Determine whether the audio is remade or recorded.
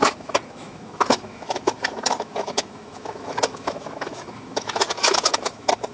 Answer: remade